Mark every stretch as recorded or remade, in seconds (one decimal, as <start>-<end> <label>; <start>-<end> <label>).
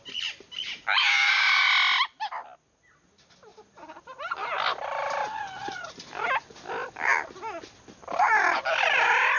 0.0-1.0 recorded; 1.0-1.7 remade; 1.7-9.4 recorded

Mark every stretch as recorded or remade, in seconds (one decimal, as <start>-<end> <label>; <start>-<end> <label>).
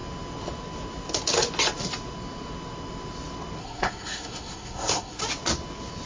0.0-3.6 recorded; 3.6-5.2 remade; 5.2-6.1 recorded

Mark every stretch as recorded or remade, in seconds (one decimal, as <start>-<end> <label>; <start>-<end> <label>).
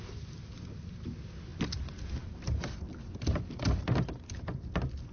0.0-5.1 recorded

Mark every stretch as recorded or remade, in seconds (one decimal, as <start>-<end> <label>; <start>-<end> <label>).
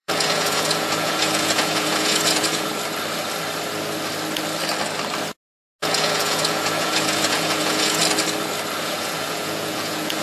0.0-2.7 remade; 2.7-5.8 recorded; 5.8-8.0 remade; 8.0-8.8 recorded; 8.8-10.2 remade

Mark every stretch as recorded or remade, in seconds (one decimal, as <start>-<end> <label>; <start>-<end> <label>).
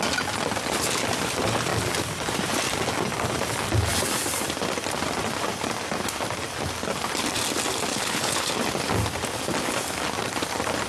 0.0-7.9 recorded; 7.9-8.5 remade; 8.5-10.9 recorded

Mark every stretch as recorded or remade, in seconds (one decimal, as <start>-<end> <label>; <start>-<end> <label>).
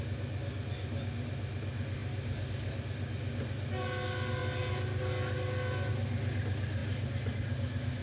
0.0-8.0 recorded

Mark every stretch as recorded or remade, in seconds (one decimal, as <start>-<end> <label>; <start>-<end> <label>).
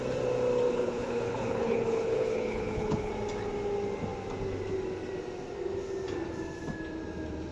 0.0-0.7 recorded; 0.7-3.1 remade; 3.1-7.5 recorded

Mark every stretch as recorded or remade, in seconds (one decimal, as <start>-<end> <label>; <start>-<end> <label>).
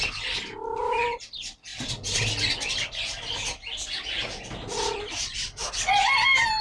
0.0-6.6 recorded